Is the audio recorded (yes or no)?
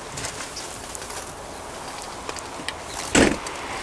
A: yes